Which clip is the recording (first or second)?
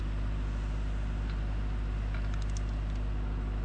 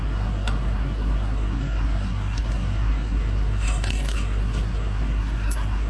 first